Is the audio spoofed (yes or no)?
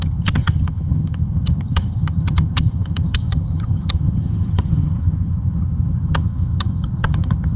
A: yes